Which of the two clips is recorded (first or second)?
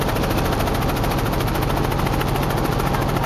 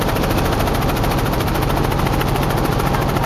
first